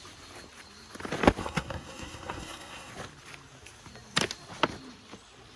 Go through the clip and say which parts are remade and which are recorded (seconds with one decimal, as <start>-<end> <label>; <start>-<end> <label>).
0.0-1.4 recorded; 1.4-2.9 remade; 2.9-5.6 recorded